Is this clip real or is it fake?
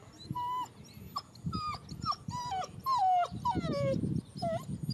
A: real